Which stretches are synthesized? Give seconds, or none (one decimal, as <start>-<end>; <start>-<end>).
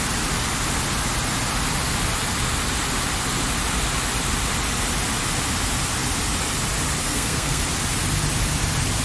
7.0-7.6